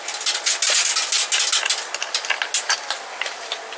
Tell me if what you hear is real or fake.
real